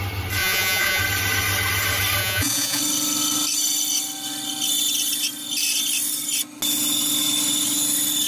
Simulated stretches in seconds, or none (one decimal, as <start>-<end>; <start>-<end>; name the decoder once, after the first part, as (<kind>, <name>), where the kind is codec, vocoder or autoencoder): 0.4-1.0 (vocoder, Vocos); 2.2-2.8